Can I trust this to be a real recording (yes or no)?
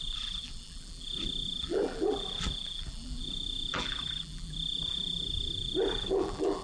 no